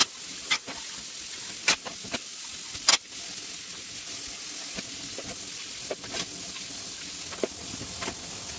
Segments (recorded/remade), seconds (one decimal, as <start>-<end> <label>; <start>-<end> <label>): 0.0-8.6 recorded